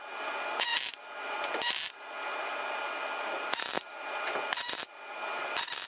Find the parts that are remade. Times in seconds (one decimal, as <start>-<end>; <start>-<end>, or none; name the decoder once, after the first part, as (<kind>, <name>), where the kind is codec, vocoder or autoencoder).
none